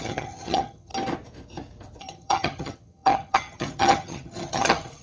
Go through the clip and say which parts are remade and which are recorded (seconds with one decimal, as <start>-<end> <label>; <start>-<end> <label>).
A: 0.0-0.9 remade; 0.9-2.0 recorded; 2.0-5.0 remade